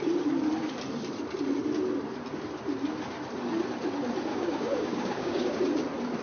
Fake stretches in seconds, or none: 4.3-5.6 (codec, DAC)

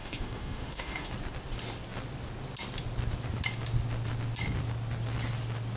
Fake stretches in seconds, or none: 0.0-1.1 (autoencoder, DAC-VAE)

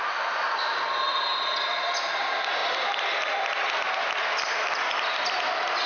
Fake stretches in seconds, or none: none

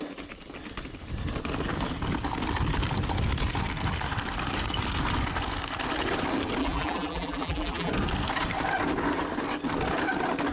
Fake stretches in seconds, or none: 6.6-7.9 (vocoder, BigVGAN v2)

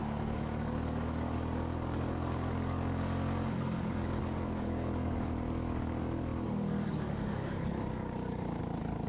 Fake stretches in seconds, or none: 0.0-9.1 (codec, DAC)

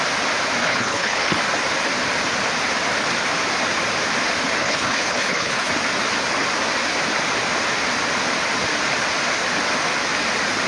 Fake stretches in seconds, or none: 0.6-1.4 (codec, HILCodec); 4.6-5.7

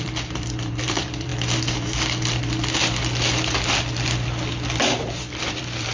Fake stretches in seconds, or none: 0.0-1.3 (vocoder, BigVGAN v2); 4.8-5.9